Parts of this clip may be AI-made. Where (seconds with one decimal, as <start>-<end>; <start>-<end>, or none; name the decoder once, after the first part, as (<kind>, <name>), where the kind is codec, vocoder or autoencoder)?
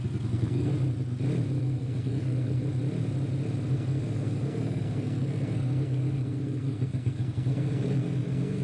0.0-0.7 (codec, SNAC); 1.6-2.6; 3.7-8.6